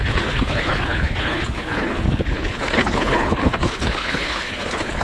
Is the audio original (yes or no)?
no